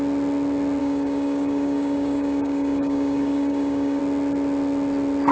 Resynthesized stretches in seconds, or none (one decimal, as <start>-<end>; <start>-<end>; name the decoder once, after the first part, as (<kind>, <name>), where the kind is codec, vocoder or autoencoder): 0.8-4.0 (codec, DAC)